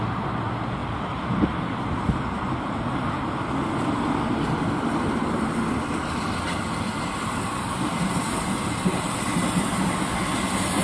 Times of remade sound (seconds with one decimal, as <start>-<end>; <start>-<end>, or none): none